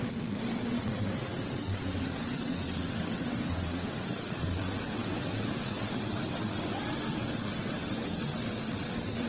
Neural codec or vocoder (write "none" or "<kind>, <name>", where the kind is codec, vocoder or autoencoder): vocoder, WaveNeXt